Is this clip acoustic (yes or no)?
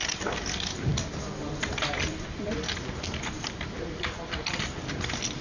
yes